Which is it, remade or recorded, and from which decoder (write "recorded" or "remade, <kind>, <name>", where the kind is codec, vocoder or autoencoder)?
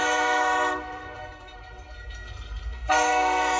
remade, codec, SNAC